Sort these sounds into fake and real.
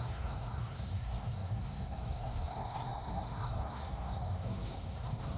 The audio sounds fake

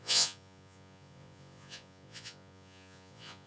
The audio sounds fake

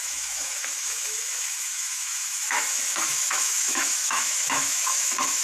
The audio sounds fake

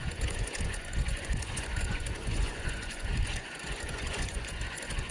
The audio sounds fake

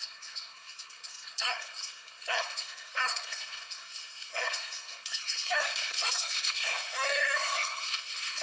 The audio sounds fake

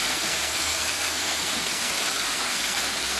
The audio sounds fake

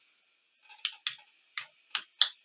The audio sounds real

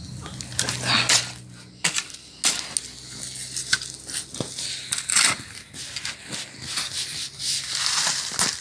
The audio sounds real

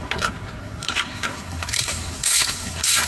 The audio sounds fake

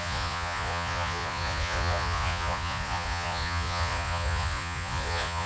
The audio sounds fake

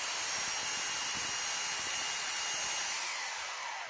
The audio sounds real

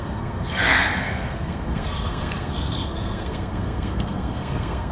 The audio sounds fake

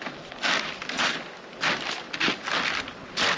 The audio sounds real